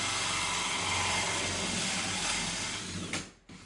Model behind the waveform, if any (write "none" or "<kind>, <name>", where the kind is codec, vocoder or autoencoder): none